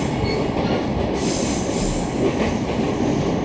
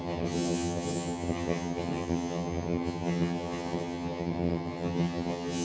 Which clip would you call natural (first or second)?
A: first